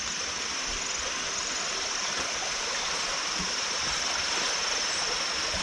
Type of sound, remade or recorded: recorded